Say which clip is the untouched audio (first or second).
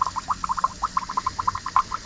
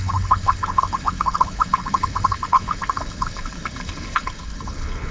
first